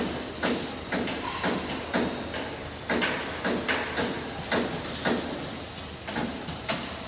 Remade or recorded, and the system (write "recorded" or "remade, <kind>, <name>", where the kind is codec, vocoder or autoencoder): recorded